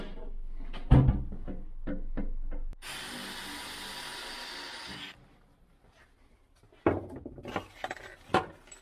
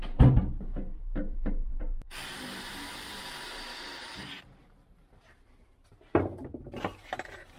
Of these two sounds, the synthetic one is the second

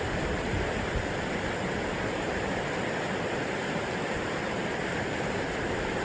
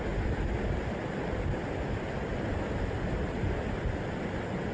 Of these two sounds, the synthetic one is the first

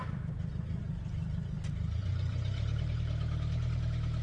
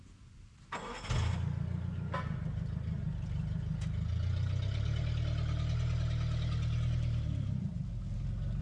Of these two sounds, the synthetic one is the first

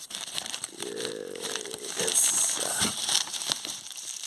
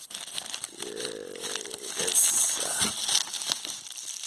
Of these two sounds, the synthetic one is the first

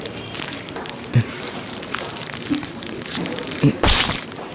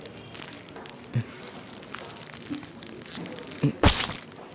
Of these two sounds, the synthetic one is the first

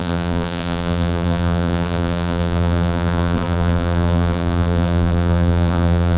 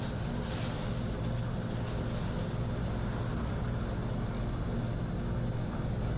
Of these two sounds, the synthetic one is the first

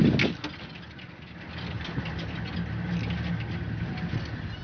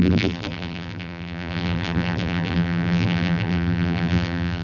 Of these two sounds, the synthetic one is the second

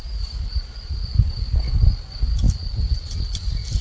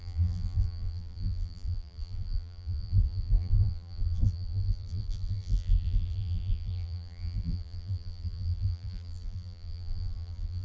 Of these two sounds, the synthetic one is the second